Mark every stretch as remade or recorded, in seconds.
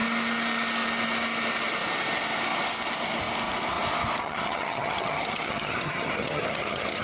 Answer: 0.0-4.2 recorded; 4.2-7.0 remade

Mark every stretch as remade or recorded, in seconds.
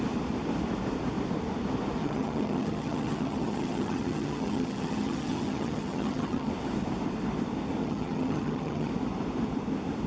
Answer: 0.0-2.0 recorded; 2.0-6.5 remade; 6.5-7.8 recorded; 7.8-8.9 remade; 8.9-10.1 recorded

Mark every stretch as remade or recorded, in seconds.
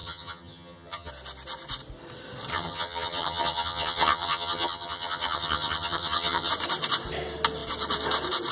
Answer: 0.0-1.1 remade; 1.1-2.5 recorded; 2.5-6.5 remade; 6.5-8.5 recorded